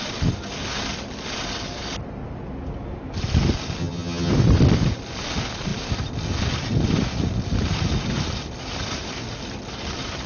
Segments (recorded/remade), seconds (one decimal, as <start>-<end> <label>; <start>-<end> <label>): 0.0-3.8 recorded; 3.8-4.3 remade; 4.3-10.3 recorded